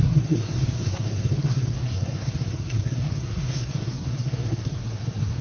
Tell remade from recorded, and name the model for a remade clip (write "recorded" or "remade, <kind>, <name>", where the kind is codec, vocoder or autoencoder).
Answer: remade, codec, SNAC